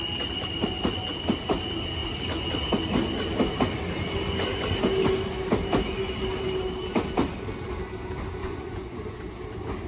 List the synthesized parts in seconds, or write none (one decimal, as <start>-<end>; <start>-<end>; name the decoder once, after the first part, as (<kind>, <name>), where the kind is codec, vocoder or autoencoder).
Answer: 8.4-9.2 (vocoder, Vocos)